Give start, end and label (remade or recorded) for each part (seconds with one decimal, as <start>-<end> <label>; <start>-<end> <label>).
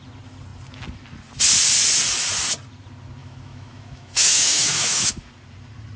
0.0-3.2 recorded; 3.2-5.3 remade; 5.3-6.0 recorded